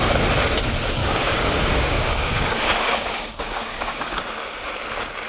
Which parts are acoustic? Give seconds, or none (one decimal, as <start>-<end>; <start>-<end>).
0.0-1.0; 4.2-5.3